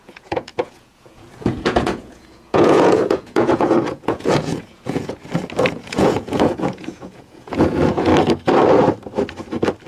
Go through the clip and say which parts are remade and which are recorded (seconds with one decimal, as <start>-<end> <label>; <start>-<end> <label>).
0.0-5.2 remade; 5.2-5.7 recorded; 5.7-8.1 remade; 8.1-9.9 recorded